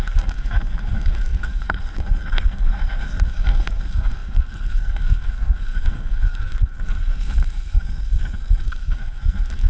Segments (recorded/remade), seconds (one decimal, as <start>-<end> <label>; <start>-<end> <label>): 0.0-9.7 remade